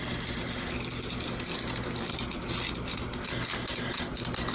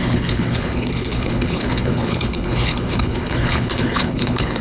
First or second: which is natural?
first